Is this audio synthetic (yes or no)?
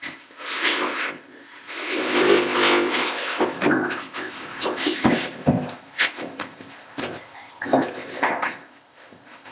yes